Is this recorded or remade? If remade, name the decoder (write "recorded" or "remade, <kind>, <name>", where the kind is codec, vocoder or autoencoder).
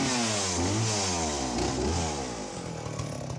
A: recorded